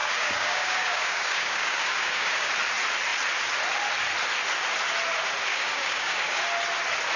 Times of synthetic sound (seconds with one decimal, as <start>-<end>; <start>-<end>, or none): 0.0-2.5; 5.5-6.4